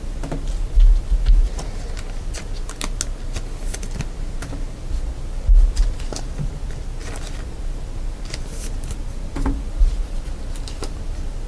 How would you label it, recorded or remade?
recorded